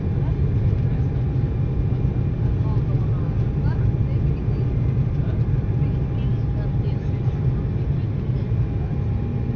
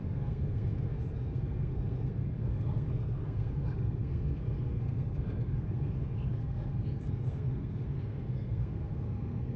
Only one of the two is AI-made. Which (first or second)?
second